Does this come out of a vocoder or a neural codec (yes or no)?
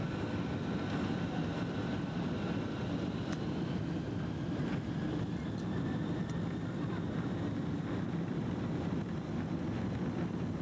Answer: no